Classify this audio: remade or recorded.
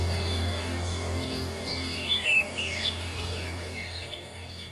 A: remade